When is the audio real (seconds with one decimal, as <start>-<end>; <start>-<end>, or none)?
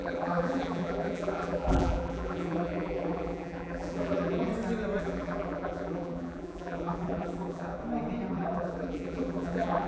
4.5-5.0; 7.8-8.3